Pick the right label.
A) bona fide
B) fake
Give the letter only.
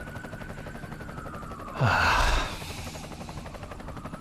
B